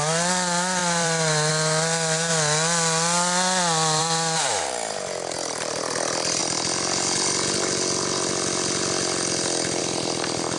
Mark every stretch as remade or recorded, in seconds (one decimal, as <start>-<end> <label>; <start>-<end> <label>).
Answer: 0.0-2.3 remade; 2.3-4.0 recorded; 4.0-6.4 remade; 6.4-9.8 recorded; 9.8-10.6 remade